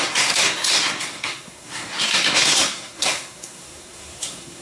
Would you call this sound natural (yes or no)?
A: no